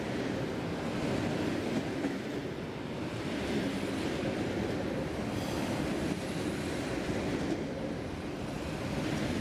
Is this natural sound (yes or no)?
yes